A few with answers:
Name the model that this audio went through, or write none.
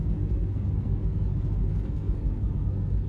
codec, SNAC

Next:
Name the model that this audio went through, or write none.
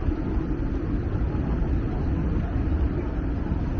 none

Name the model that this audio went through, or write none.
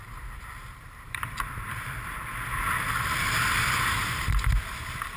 vocoder, BigVGAN v2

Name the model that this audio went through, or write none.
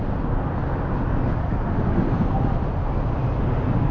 none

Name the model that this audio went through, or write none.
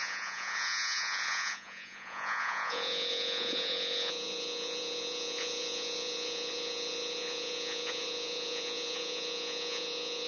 vocoder, Vocos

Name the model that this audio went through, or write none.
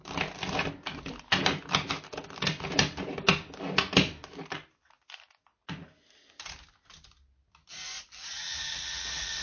none